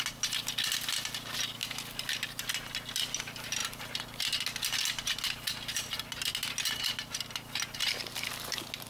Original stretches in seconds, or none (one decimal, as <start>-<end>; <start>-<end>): 0.0-8.9